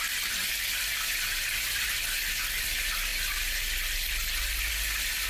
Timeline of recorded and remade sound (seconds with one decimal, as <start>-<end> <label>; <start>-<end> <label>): 0.0-5.3 recorded